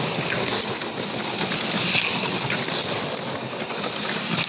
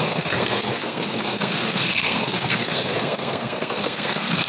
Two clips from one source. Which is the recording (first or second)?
first